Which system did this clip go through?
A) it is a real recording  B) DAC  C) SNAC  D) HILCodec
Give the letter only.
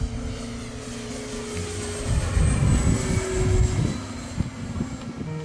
A